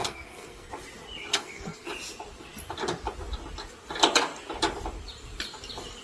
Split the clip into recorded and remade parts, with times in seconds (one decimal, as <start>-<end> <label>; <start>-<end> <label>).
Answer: 0.0-0.7 remade; 0.7-1.3 recorded; 1.3-1.9 remade; 1.9-6.0 recorded